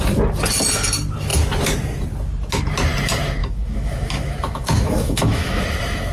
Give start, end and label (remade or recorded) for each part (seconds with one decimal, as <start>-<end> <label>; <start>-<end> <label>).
0.0-3.4 recorded; 3.4-5.6 remade; 5.6-6.1 recorded